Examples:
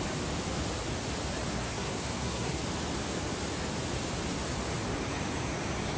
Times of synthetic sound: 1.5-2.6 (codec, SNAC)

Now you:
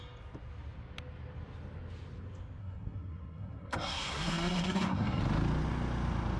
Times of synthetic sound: 2.6-5.2 (codec, SNAC)

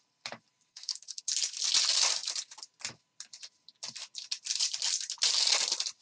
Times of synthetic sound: 0.7-1.2 (codec, SNAC)